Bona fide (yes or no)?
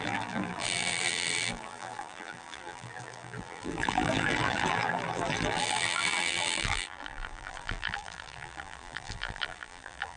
no